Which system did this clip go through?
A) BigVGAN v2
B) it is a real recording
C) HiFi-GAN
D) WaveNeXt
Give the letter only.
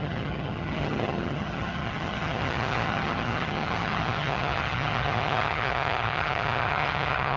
C